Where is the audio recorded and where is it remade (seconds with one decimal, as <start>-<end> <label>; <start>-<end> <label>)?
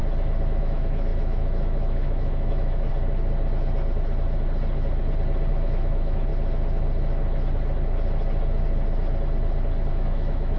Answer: 0.0-0.6 recorded; 0.6-2.9 remade; 2.9-5.5 recorded; 5.5-6.3 remade; 6.3-9.9 recorded; 9.9-10.6 remade